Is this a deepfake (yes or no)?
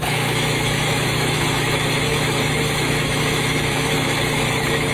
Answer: yes